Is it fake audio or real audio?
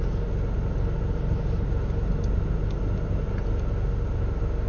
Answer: real